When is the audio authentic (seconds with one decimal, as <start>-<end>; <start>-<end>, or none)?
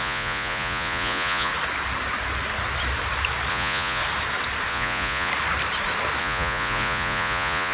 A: 1.5-3.5; 4.0-4.7; 5.3-6.2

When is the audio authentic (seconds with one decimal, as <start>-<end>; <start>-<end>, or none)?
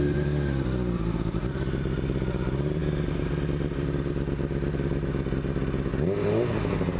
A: 0.0-7.0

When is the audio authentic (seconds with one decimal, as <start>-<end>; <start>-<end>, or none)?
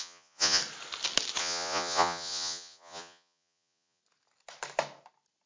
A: 0.6-1.4; 4.0-5.5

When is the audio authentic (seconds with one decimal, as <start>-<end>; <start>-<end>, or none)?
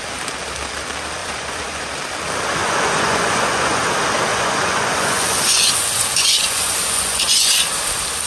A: 0.0-1.2; 1.9-2.6; 3.8-4.3; 7.7-8.3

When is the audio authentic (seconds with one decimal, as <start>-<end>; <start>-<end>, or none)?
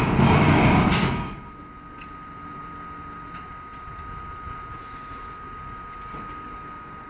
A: 0.0-7.1